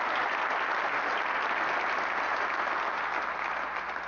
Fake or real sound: real